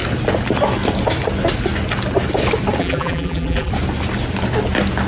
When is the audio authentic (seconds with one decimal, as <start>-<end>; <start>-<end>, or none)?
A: 0.0-2.8; 3.7-5.1